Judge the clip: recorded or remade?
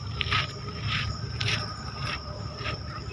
remade